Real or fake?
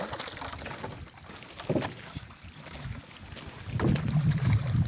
real